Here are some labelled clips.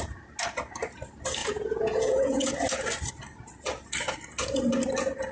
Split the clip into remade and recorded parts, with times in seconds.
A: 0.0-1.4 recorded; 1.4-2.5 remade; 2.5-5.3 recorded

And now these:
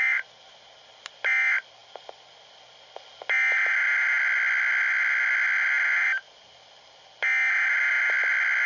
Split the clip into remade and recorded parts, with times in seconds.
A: 0.0-8.7 recorded

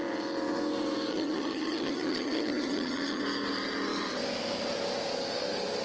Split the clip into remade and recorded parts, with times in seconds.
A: 0.0-1.1 recorded; 1.1-3.2 remade; 3.2-5.8 recorded

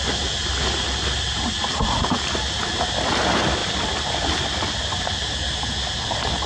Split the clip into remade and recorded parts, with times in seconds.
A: 0.0-6.5 recorded

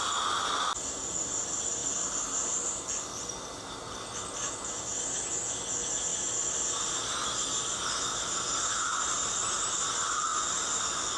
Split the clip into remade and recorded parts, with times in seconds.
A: 0.0-11.2 recorded